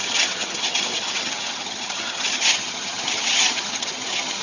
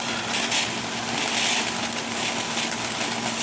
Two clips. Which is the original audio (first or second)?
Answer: second